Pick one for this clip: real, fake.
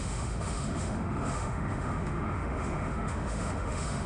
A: fake